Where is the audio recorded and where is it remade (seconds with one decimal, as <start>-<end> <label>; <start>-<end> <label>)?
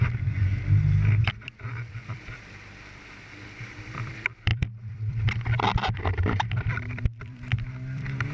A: 0.0-0.5 remade; 0.5-1.3 recorded; 1.3-8.3 remade